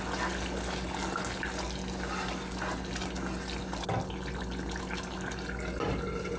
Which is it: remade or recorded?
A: recorded